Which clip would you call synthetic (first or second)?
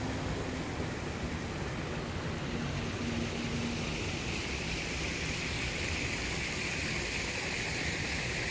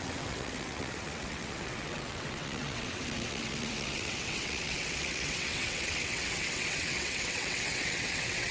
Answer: second